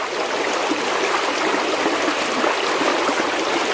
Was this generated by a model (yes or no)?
no